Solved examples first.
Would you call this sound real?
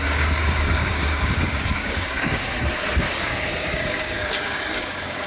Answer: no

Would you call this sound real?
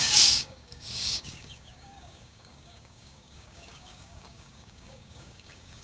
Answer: no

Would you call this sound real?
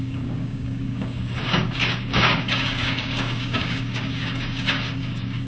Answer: no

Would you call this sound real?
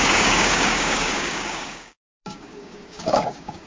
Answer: no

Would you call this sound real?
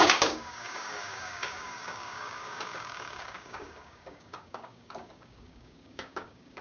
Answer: no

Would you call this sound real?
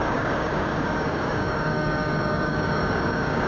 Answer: no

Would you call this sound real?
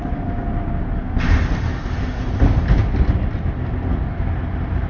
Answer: yes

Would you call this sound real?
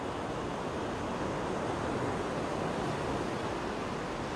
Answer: yes